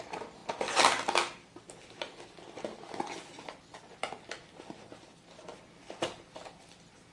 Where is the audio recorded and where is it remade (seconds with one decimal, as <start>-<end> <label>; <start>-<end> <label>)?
0.0-7.1 recorded